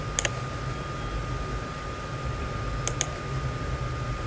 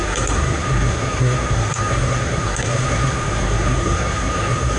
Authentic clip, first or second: first